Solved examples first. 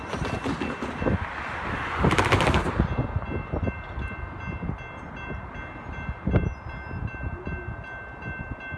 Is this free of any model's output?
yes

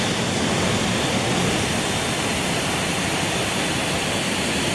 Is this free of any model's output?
yes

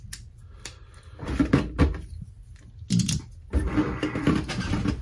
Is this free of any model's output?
yes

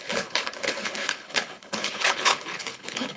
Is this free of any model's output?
no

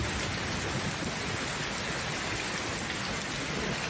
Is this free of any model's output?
yes